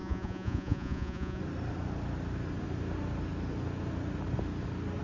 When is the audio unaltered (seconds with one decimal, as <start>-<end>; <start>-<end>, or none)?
1.4-5.0